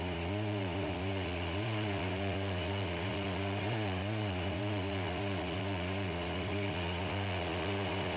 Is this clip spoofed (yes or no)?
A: yes